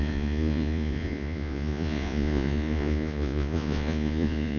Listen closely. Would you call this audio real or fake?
fake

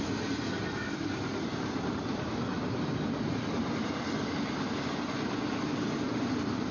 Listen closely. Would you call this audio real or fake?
real